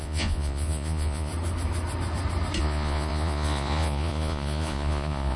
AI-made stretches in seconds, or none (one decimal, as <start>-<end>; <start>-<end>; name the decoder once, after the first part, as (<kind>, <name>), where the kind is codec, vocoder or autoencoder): 0.0-1.3 (vocoder, Vocos); 2.6-5.4